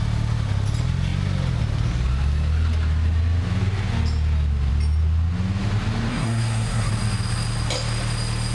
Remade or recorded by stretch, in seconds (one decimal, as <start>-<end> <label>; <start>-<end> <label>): 0.0-6.1 recorded; 6.1-6.9 remade; 6.9-8.5 recorded